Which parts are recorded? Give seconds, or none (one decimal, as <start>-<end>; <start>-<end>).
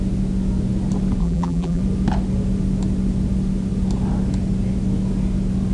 0.0-1.2; 1.8-5.7